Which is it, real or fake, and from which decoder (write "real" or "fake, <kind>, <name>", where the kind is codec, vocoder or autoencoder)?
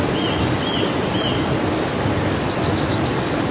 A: real